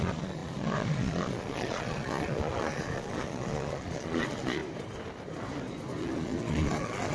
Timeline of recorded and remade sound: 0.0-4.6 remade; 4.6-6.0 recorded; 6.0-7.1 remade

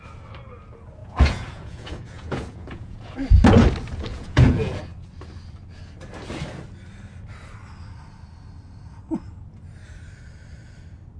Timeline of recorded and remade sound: 0.0-1.0 recorded; 1.0-3.1 remade; 3.1-4.1 recorded; 4.1-4.8 remade; 4.8-11.2 recorded

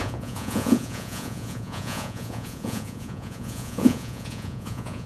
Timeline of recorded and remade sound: 0.0-5.1 remade

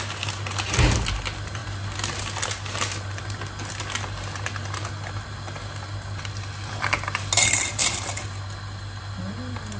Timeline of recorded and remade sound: 0.0-9.8 recorded

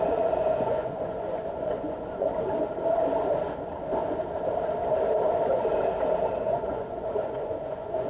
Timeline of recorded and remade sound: 0.0-2.3 remade; 2.3-6.4 recorded; 6.4-8.1 remade

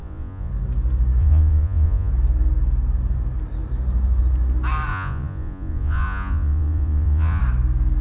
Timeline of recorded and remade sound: 0.0-0.5 remade; 0.5-1.2 recorded; 1.2-2.1 remade; 2.1-4.9 recorded; 4.9-7.4 remade; 7.4-8.0 recorded